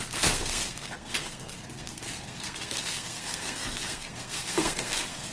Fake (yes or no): yes